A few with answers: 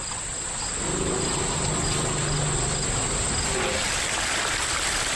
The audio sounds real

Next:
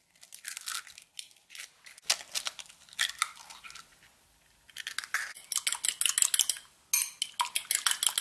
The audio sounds real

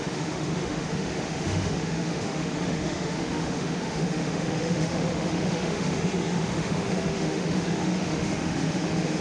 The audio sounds fake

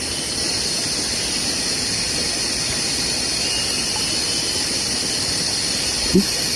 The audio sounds real